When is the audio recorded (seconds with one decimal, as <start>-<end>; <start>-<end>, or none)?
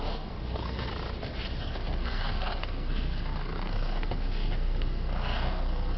0.9-1.6